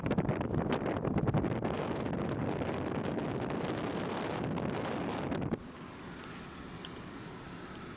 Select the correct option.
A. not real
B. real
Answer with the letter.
B